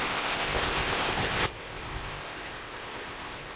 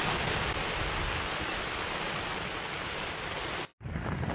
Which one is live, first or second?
second